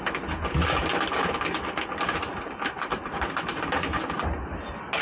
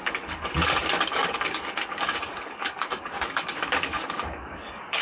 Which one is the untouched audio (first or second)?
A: first